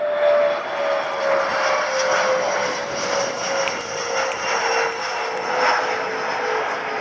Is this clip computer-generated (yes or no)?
no